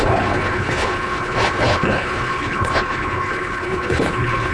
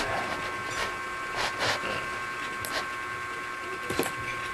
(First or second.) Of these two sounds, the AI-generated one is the first